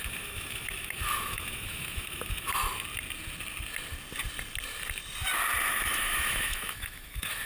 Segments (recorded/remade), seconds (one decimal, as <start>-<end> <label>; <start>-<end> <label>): 0.0-2.6 remade; 2.6-5.7 recorded; 5.7-7.5 remade